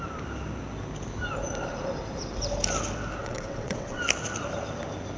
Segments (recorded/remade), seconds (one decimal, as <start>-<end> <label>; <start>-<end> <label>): 0.0-3.2 recorded; 3.2-4.0 remade; 4.0-5.2 recorded